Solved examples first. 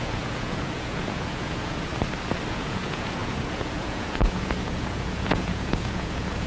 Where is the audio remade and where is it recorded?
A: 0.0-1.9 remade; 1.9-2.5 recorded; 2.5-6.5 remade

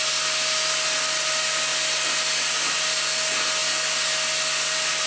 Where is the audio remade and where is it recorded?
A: 0.0-5.1 recorded